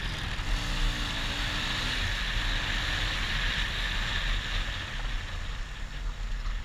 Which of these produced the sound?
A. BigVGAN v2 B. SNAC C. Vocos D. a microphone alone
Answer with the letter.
D